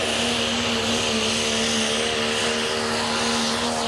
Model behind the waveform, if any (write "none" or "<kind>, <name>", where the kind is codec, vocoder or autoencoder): none